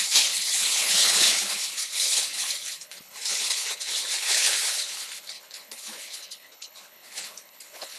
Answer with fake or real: fake